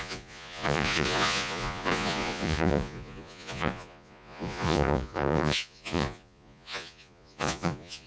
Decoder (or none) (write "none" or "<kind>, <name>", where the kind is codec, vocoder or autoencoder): vocoder, Vocos